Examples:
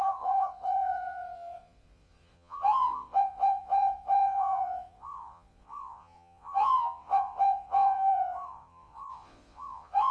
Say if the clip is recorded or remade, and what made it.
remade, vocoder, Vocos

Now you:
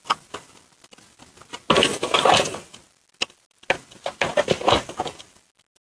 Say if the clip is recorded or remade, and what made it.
recorded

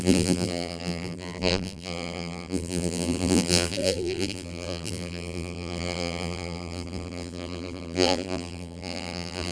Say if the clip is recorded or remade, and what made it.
remade, vocoder, BigVGAN v2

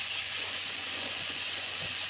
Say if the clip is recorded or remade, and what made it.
remade, vocoder, Vocos